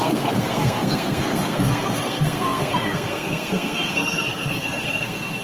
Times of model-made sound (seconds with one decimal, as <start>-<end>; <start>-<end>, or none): 0.0-5.4